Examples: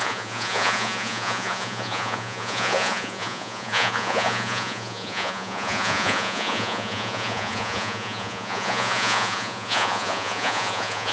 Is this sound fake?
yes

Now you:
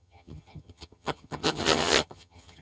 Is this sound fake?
yes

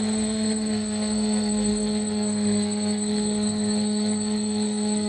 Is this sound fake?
yes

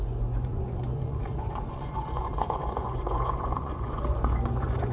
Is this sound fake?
yes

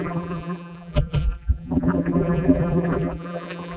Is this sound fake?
yes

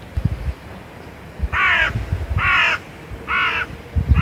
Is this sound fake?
no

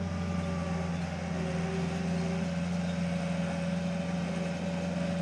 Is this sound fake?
no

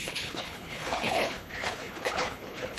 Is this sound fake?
yes